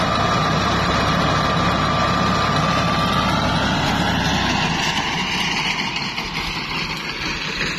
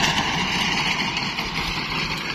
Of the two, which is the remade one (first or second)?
second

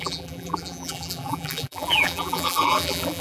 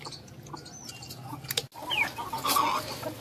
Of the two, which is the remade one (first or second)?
first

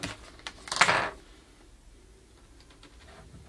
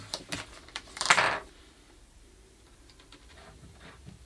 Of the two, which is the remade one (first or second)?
second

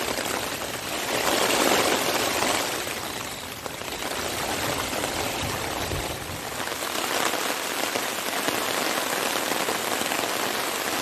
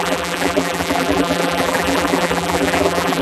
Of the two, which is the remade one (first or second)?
second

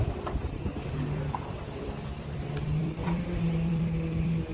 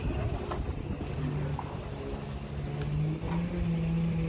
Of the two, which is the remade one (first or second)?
first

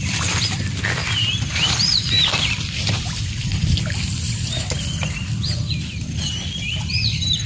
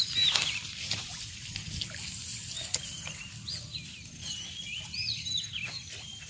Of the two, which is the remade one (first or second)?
first